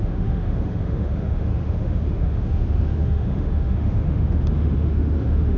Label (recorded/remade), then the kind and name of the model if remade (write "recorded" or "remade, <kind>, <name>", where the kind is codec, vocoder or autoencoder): remade, autoencoder, DAC-VAE